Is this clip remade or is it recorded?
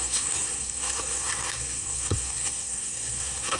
remade